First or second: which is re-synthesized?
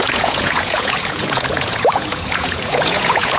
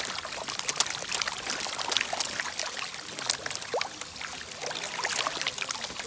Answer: first